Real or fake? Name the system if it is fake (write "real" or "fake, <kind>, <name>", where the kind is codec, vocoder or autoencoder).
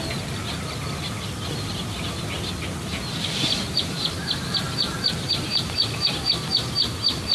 real